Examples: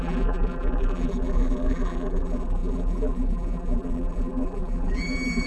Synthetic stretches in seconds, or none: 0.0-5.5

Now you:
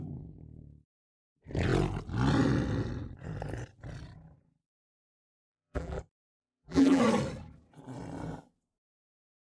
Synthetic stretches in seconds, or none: 5.4-6.0; 6.4-7.0

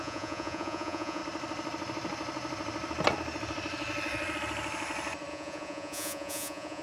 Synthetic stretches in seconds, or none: 0.0-1.2; 5.3-6.8